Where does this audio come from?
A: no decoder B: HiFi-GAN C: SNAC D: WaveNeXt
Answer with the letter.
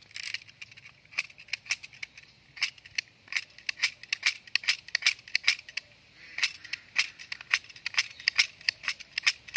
A